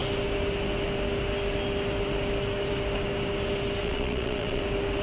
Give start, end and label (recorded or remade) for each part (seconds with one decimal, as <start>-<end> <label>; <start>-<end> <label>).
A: 0.0-3.8 recorded; 3.8-4.6 remade; 4.6-5.0 recorded